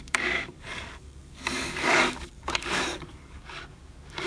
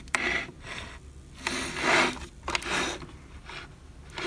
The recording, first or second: second